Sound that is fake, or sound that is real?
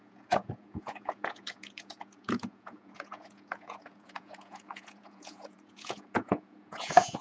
fake